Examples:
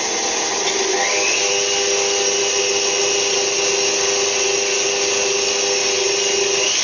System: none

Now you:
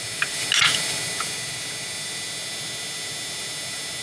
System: none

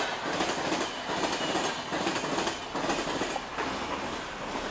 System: none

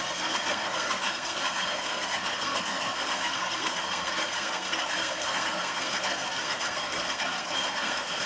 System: codec, SNAC